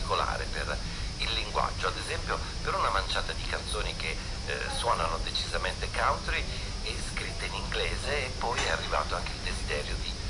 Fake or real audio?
real